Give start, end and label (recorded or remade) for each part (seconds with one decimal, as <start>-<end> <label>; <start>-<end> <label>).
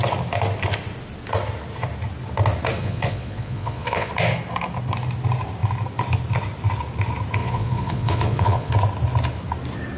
0.0-2.8 recorded; 2.8-4.1 remade; 4.1-7.4 recorded; 7.4-8.7 remade; 8.7-10.0 recorded